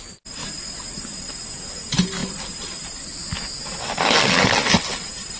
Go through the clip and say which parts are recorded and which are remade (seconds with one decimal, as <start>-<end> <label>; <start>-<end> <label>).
0.0-5.4 recorded